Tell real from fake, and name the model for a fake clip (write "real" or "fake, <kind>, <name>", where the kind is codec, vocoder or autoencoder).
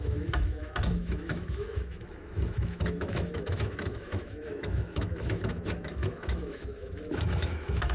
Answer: fake, autoencoder, DAC-VAE